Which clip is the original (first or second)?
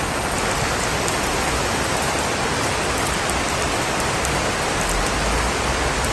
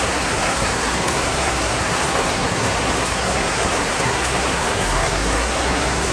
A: first